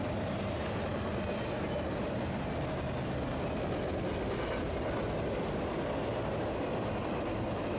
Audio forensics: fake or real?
real